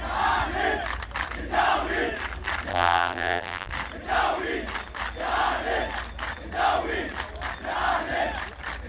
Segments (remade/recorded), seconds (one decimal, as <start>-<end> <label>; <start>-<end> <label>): 0.0-2.7 recorded; 2.7-3.7 remade; 3.7-8.9 recorded